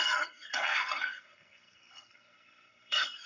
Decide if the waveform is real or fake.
fake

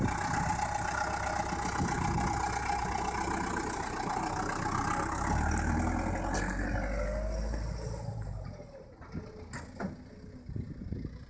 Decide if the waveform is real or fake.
real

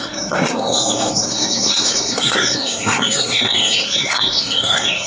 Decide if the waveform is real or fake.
fake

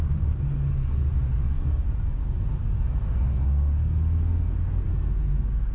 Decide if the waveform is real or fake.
fake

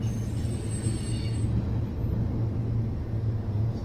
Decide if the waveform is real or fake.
real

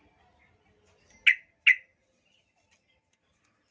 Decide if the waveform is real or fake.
real